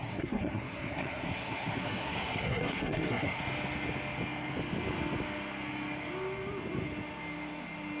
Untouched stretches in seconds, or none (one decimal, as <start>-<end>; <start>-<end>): 3.4-8.0